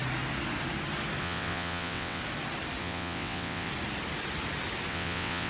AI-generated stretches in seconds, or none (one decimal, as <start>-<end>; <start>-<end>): 1.2-2.2; 2.8-3.7; 4.9-5.5